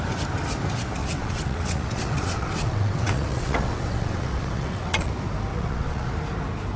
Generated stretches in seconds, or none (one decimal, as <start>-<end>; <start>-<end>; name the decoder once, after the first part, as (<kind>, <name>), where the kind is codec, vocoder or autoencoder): 1.0-5.1 (vocoder, WaveNeXt); 5.5-6.1